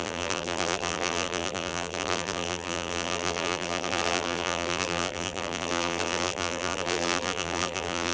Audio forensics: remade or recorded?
remade